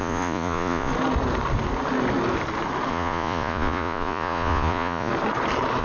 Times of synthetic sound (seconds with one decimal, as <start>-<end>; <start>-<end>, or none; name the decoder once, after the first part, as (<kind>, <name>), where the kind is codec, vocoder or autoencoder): 0.0-0.9 (vocoder, Vocos); 2.9-5.1